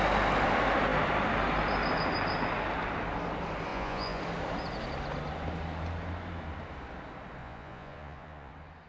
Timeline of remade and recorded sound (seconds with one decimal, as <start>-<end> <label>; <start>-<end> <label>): 0.0-3.7 recorded; 3.7-4.2 remade; 4.2-7.4 recorded; 7.4-8.5 remade; 8.5-8.9 recorded

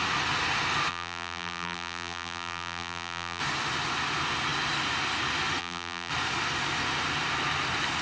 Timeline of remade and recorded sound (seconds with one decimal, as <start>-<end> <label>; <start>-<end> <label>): 0.0-0.9 recorded; 0.9-3.4 remade; 3.4-5.6 recorded; 5.6-6.1 remade; 6.1-8.0 recorded